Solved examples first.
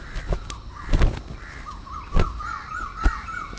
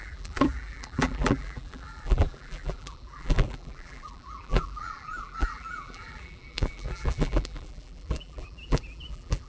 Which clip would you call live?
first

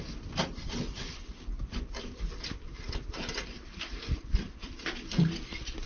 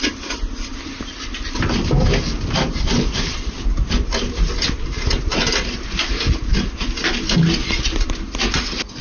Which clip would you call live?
second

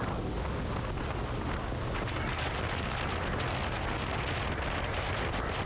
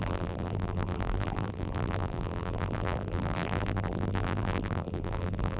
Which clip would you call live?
first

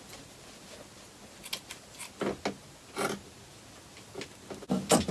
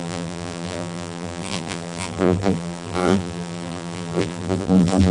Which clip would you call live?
first